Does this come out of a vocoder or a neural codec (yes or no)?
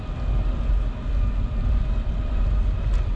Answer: no